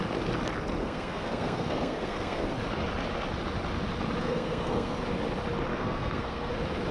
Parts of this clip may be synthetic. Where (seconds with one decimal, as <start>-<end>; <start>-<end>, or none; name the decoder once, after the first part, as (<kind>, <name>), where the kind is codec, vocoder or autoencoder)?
0.8-2.5 (codec, SNAC); 4.2-5.0; 5.7-6.5